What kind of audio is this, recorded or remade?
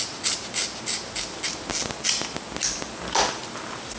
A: recorded